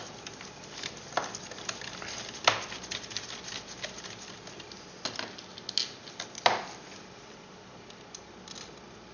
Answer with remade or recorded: recorded